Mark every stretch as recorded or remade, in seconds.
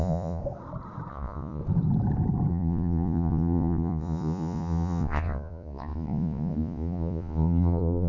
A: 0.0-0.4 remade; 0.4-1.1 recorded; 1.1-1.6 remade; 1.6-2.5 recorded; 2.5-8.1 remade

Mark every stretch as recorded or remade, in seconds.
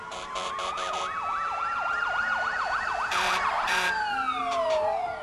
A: 0.0-5.2 remade